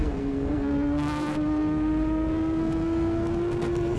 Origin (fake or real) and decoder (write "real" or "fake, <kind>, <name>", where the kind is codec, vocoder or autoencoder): fake, codec, SNAC